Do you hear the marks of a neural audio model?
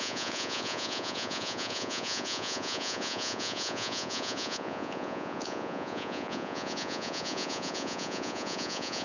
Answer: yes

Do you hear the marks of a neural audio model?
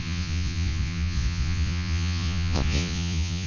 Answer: yes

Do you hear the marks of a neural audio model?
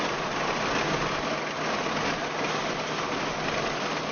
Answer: no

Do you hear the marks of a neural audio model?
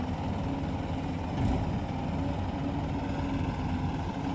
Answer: no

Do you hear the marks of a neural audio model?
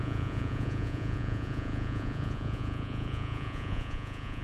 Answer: yes